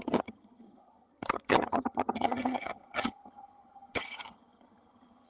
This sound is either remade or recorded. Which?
remade